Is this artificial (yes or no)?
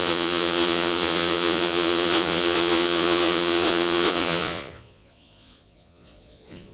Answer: yes